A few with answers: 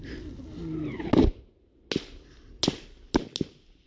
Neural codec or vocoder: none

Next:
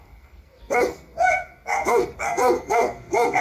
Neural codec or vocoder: codec, SNAC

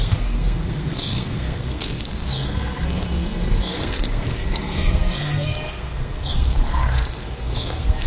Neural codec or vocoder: codec, SNAC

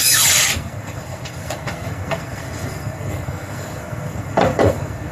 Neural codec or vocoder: codec, SNAC